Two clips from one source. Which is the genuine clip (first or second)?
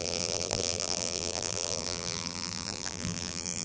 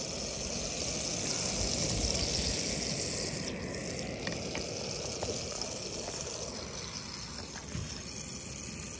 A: second